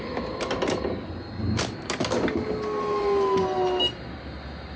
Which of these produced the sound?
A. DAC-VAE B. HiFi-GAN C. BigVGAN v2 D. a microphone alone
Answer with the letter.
D